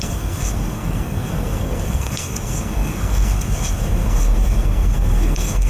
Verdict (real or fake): fake